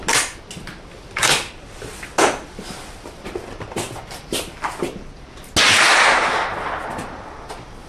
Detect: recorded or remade recorded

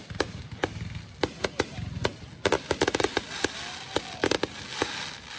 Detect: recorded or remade recorded